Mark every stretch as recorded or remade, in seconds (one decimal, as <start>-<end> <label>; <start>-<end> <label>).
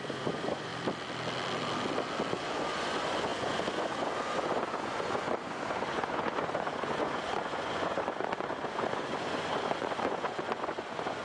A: 0.0-0.7 remade; 0.7-2.3 recorded; 2.3-11.2 remade